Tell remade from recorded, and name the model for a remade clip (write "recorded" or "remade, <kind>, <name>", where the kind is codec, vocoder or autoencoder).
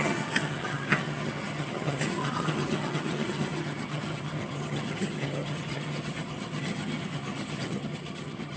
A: remade, vocoder, HiFi-GAN